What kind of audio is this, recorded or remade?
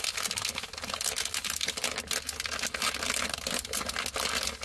recorded